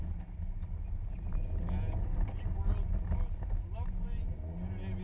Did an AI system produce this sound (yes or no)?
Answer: no